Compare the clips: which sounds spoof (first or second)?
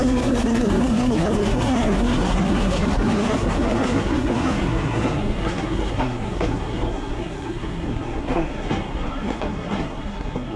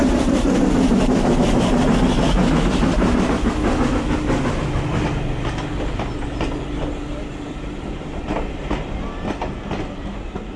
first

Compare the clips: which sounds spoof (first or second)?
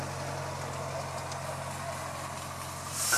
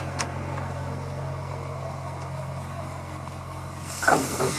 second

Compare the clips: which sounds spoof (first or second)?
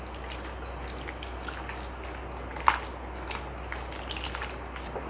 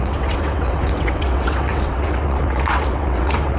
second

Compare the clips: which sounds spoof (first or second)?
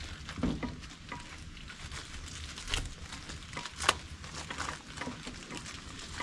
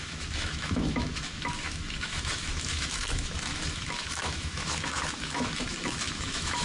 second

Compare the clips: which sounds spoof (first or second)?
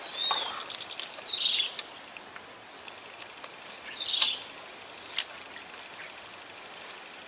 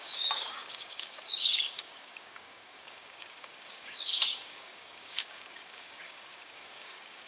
second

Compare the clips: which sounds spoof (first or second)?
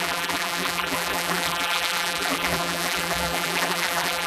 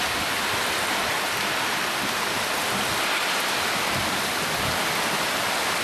first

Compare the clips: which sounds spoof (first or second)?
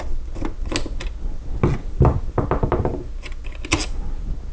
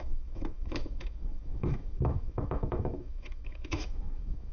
second